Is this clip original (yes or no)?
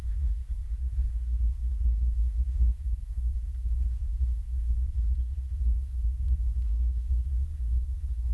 no